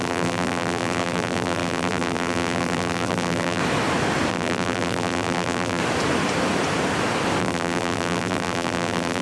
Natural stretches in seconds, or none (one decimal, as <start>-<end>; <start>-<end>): 3.6-4.3; 5.8-7.4